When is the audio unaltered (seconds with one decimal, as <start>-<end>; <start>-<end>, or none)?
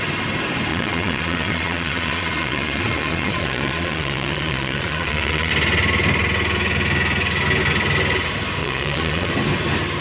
0.0-0.7; 5.5-8.6; 9.3-10.0